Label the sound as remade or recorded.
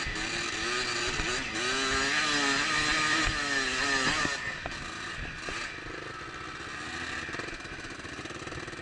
recorded